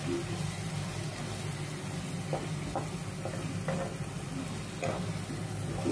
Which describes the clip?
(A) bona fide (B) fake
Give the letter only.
A